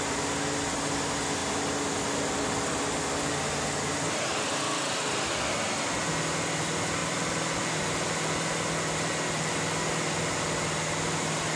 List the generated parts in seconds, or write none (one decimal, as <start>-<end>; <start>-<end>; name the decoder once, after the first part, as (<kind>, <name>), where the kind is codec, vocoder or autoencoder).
none